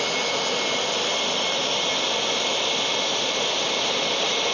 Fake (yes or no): no